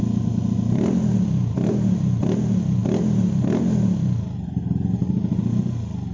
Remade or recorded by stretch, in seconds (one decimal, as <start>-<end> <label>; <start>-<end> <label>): 0.0-6.1 recorded